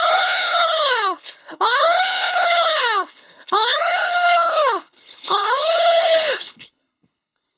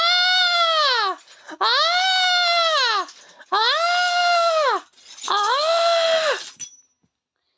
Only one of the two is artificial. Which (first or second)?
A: first